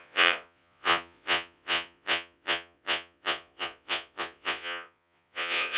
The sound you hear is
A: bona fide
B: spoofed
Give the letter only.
B